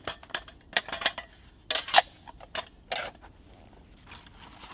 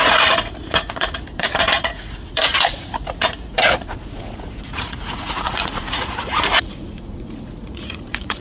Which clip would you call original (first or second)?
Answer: first